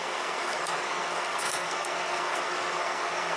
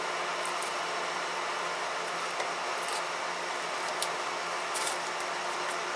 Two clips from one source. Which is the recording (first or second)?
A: second